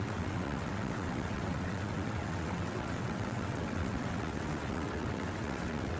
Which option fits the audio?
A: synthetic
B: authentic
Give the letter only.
A